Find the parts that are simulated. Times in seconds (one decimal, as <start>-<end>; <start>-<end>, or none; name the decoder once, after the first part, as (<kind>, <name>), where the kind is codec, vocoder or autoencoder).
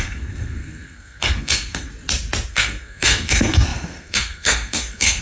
0.0-1.9 (codec, SNAC); 2.5-5.2